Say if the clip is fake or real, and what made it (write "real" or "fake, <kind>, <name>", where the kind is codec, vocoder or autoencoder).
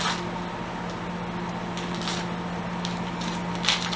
real